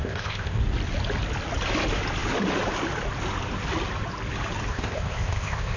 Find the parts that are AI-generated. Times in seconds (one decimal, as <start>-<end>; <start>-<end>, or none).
0.0-0.6; 4.7-5.8